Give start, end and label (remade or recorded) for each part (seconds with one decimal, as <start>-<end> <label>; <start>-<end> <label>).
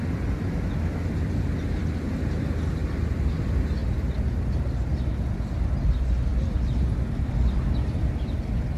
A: 0.0-3.8 recorded; 3.8-5.3 remade; 5.3-8.8 recorded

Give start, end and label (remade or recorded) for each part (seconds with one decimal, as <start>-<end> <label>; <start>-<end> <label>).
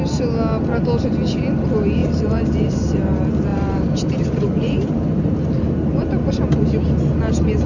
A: 0.0-2.0 recorded; 2.0-2.5 remade; 2.5-3.5 recorded; 3.5-6.3 remade; 6.3-7.7 recorded